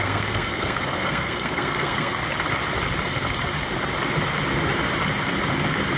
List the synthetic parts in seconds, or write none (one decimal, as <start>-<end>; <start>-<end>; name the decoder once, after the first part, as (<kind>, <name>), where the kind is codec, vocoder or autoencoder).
0.0-2.2 (codec, SNAC)